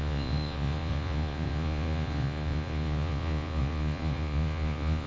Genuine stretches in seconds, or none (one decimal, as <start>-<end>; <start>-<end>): none